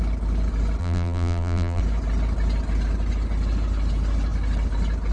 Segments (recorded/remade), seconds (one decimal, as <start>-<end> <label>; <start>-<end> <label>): 0.0-0.8 recorded; 0.8-1.8 remade; 1.8-5.1 recorded